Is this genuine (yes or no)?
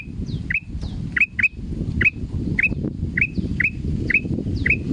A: yes